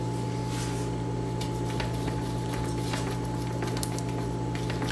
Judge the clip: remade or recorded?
recorded